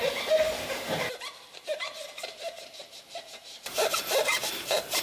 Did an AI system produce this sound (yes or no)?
yes